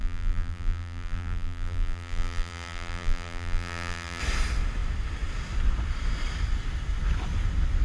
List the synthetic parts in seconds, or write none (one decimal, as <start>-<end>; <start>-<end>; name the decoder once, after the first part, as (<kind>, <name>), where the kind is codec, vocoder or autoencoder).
0.0-4.2 (vocoder, BigVGAN v2)